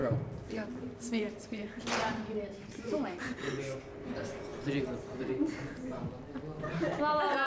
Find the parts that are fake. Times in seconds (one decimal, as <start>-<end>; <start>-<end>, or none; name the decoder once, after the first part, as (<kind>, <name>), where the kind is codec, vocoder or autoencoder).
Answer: 0.0-3.8 (vocoder, BigVGAN v2); 4.5-7.0